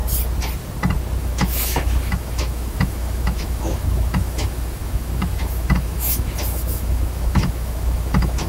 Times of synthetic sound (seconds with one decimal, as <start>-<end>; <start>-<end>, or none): 1.2-8.5